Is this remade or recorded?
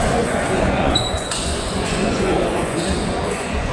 remade